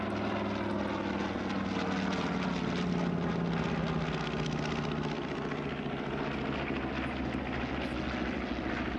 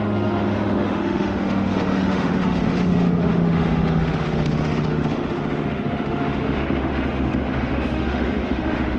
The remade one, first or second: second